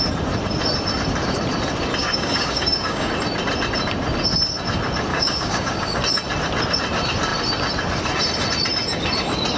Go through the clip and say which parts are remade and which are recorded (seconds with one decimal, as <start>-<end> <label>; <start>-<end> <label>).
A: 0.0-2.0 recorded; 2.0-3.1 remade; 3.1-5.1 recorded; 5.1-6.0 remade; 6.0-9.6 recorded